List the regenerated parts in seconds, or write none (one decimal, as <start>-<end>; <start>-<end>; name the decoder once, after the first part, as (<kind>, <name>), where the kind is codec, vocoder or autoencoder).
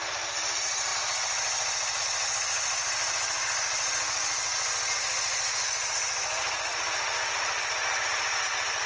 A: none